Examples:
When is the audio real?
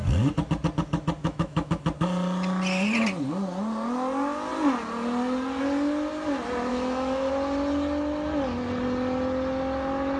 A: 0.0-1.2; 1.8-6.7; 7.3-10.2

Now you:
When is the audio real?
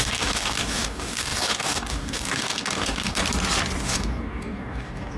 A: 3.2-3.8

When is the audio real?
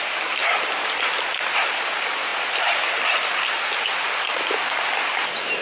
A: 0.0-0.4; 1.1-5.6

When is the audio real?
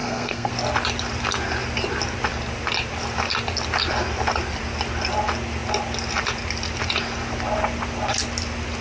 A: 0.5-8.8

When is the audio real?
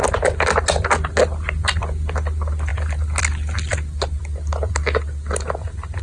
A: 0.0-6.0